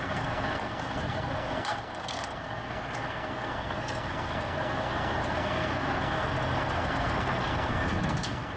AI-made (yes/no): yes